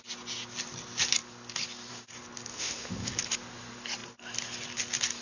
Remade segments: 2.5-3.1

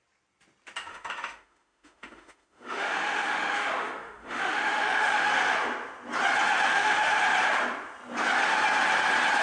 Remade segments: 0.9-5.3; 6.7-7.2